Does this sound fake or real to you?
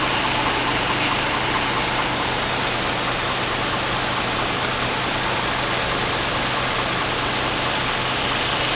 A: real